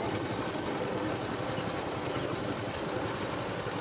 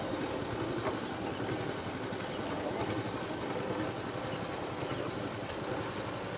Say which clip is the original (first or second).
second